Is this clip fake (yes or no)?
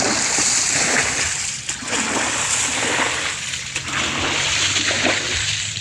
no